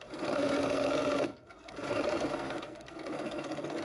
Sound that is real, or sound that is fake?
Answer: fake